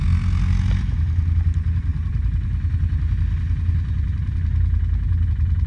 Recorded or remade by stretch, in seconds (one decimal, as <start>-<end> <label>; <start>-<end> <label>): 0.0-5.7 recorded